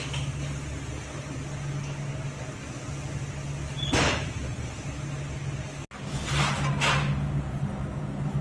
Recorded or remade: recorded